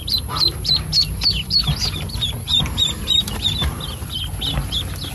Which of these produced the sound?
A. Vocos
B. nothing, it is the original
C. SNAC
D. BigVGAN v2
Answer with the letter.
B